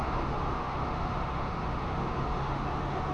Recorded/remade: remade